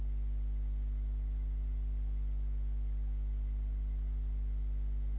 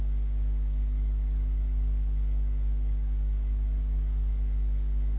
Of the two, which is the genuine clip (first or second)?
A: first